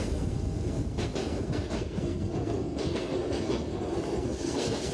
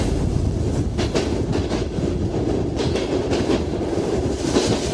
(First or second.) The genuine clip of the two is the second